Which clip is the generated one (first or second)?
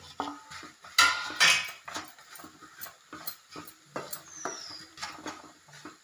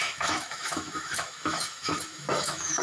second